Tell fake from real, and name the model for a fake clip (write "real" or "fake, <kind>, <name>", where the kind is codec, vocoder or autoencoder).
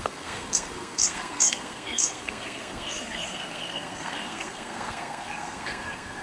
fake, codec, SNAC